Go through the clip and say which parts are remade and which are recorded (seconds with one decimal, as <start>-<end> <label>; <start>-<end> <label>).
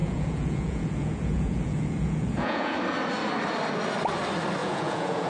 0.0-2.8 remade; 2.8-4.6 recorded; 4.6-5.3 remade